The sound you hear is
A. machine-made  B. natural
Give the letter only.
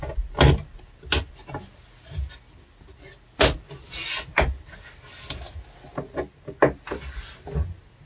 B